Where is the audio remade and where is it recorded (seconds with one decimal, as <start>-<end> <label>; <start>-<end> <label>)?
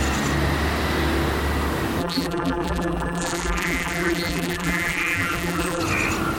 0.0-2.0 recorded; 2.0-5.8 remade; 5.8-6.4 recorded